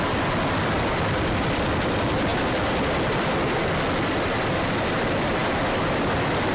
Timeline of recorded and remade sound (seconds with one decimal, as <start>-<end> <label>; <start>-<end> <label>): 0.0-6.5 remade